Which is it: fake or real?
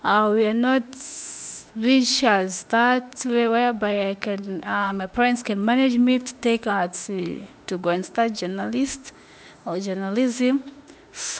fake